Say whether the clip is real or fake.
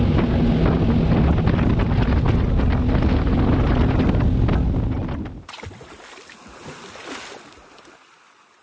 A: real